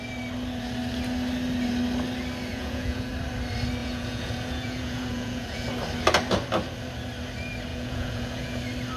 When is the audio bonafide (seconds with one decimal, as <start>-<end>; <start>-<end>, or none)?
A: 0.0-2.5; 3.1-3.8; 5.7-7.7; 8.6-9.0